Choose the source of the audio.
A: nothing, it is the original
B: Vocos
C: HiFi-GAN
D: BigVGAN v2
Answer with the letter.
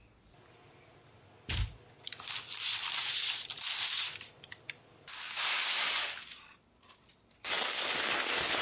A